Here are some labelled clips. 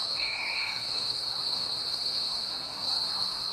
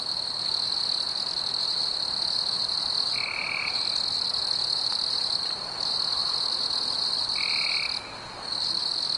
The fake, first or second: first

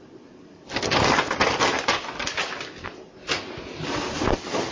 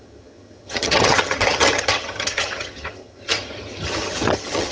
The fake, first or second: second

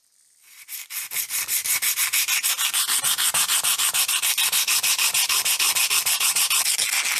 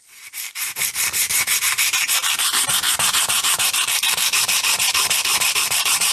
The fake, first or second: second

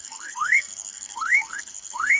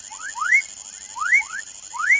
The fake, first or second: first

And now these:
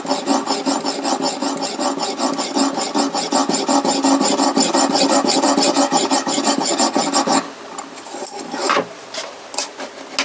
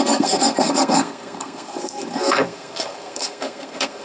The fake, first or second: second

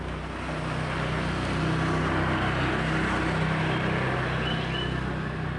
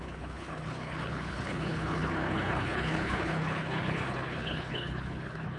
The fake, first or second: second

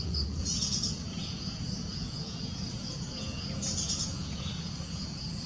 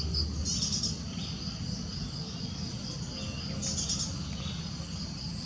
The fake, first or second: first